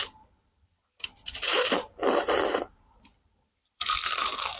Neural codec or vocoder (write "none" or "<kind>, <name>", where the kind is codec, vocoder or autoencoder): vocoder, BigVGAN v2